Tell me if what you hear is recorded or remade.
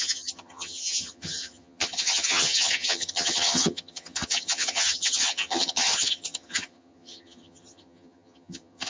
remade